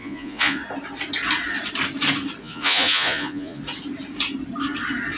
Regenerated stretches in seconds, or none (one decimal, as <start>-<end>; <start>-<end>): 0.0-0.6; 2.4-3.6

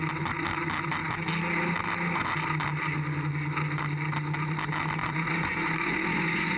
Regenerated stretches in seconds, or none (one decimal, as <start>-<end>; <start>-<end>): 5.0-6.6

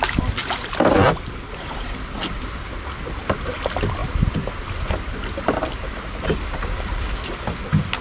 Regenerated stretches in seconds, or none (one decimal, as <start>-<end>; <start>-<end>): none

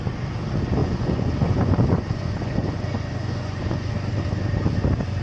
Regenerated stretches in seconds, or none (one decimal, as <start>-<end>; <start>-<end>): 0.8-3.9

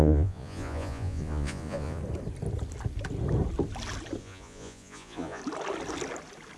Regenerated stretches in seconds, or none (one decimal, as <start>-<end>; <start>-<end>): 0.0-2.0; 4.2-5.4

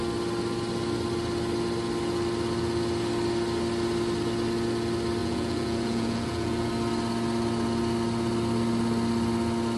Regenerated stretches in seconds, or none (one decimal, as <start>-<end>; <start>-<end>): 5.2-6.7

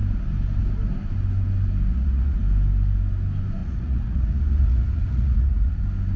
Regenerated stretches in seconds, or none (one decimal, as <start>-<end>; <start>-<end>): 1.9-2.4; 3.6-5.8